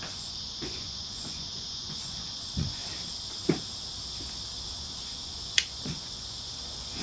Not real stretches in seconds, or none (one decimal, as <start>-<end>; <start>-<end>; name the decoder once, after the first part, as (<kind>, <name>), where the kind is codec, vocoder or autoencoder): 0.0-2.8 (vocoder, Vocos); 4.7-7.0